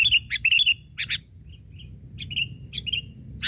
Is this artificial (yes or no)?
no